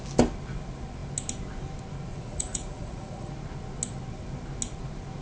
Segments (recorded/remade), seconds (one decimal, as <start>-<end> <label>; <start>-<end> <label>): 0.0-2.1 recorded; 2.1-3.3 remade; 3.3-5.2 recorded